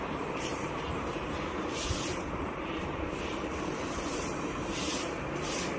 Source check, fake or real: fake